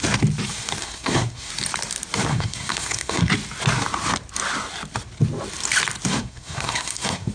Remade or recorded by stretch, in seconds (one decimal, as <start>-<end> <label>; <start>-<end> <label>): 0.0-0.8 recorded; 0.8-1.5 remade; 1.5-2.3 recorded; 2.3-3.3 remade; 3.3-6.1 recorded; 6.1-7.3 remade

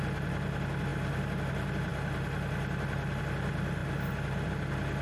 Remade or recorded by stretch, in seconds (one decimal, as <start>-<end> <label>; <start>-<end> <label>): 0.0-5.0 recorded